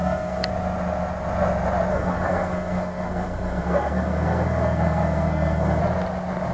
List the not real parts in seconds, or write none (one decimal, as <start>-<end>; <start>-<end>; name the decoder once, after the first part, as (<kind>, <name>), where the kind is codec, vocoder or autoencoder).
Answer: 0.0-0.5 (codec, SNAC); 1.9-5.8